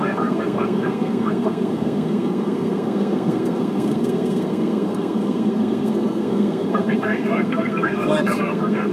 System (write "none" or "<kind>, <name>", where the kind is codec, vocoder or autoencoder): codec, SNAC